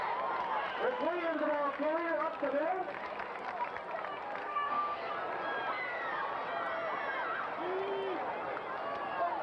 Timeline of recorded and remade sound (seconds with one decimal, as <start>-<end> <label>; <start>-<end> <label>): 0.0-4.4 recorded; 4.4-5.1 remade; 5.1-9.4 recorded